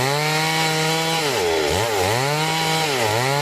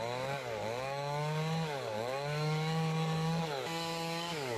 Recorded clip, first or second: first